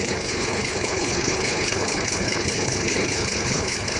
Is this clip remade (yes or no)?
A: yes